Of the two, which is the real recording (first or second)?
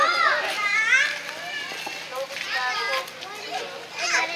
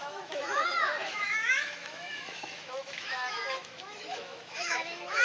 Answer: first